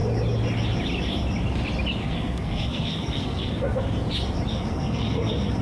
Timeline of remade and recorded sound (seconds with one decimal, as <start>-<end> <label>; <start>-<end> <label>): 0.0-2.0 recorded; 2.0-3.8 remade; 3.8-4.5 recorded; 4.5-5.6 remade